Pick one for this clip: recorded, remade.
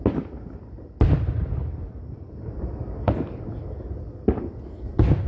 recorded